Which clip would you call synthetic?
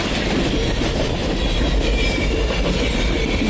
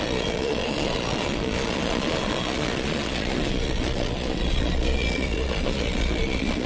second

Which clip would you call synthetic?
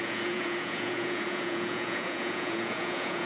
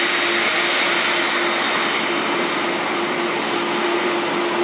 first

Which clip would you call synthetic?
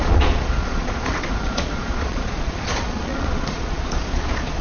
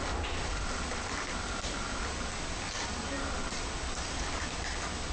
first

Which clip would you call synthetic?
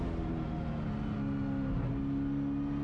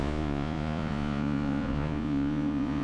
second